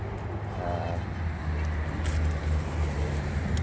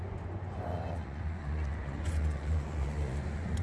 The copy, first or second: second